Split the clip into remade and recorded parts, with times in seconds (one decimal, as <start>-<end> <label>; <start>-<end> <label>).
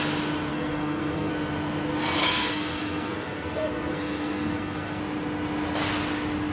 0.0-0.5 recorded; 0.5-1.3 remade; 1.3-2.2 recorded; 2.2-5.0 remade; 5.0-6.5 recorded